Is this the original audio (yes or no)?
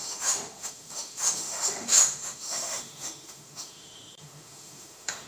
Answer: no